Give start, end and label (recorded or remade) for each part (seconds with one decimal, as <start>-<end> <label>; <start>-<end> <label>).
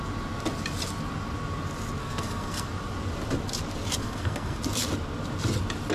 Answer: 0.0-2.0 recorded; 2.0-2.7 remade; 2.7-4.0 recorded; 4.0-4.6 remade; 4.6-5.9 recorded